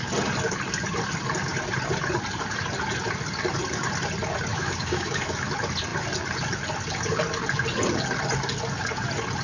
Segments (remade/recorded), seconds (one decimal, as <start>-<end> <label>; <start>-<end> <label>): 0.0-4.5 recorded; 4.5-5.5 remade; 5.5-9.4 recorded